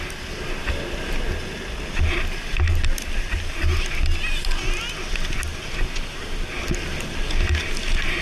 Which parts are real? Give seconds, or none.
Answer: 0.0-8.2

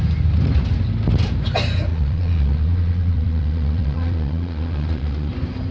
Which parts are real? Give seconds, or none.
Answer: 0.0-1.9; 5.3-5.7

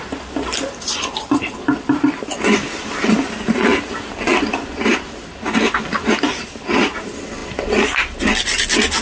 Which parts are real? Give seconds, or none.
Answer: 0.0-9.0

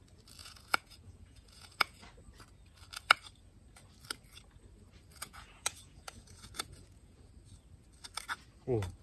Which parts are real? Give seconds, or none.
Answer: 0.0-0.4; 2.0-5.1; 7.3-9.0